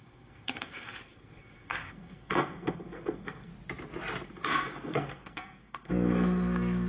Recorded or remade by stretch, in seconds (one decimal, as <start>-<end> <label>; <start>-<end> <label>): 0.0-3.5 remade; 3.5-4.3 recorded; 4.3-6.9 remade